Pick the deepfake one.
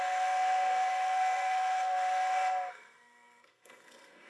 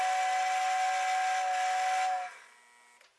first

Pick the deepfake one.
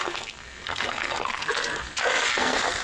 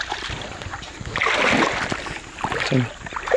first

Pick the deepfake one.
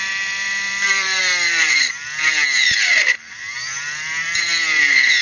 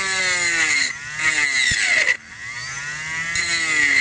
first